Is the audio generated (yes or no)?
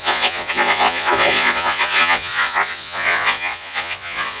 yes